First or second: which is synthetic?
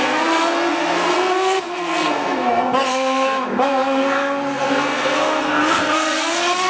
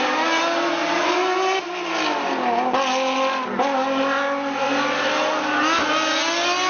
first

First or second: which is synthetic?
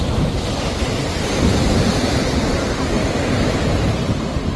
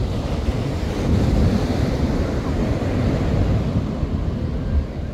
first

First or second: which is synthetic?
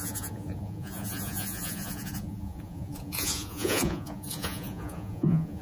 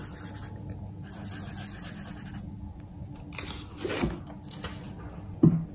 first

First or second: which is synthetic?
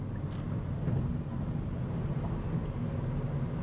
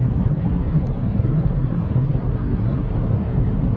second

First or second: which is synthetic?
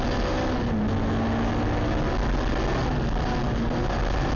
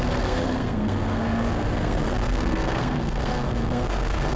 second